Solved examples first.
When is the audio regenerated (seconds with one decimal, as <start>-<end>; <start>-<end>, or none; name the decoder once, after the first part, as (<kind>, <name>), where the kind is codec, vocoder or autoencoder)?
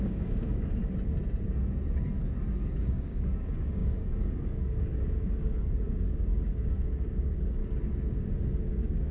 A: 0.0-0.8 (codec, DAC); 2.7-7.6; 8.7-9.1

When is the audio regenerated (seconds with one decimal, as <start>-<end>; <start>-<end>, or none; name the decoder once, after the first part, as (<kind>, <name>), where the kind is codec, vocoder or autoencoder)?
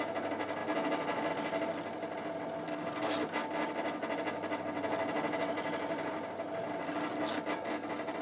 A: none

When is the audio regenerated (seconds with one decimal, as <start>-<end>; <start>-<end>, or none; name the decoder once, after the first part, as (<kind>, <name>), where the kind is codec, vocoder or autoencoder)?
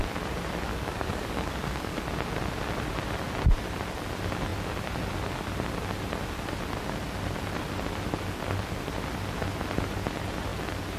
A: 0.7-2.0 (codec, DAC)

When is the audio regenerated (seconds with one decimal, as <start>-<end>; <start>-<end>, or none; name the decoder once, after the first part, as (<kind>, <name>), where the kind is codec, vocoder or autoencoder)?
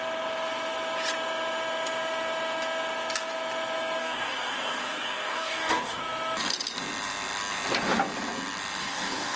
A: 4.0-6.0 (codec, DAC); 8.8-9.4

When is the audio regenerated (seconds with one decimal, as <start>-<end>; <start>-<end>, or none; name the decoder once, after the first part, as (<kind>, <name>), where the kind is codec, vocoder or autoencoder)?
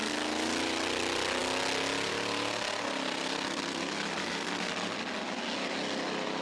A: 4.2-4.7 (codec, DAC)